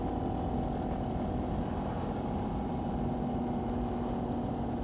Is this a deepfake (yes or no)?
no